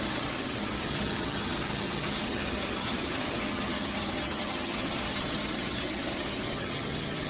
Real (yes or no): no